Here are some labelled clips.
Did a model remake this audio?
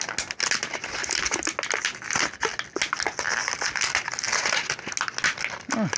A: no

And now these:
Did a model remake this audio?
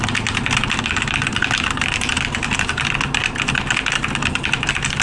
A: no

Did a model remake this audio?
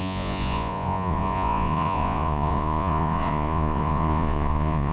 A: yes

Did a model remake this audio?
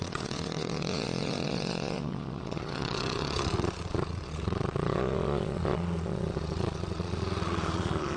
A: yes